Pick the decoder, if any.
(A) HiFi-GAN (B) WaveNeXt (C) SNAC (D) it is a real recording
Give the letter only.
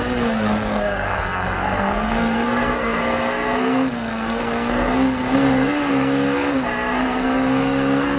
C